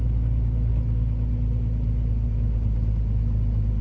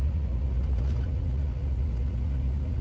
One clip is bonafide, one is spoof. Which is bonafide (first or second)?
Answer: first